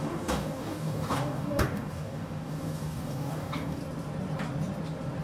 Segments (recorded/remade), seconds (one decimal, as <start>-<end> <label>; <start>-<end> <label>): 0.0-3.8 remade; 3.8-5.2 recorded